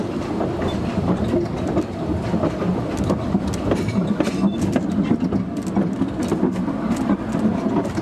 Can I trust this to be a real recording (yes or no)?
yes